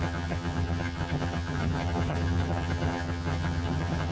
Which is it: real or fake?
fake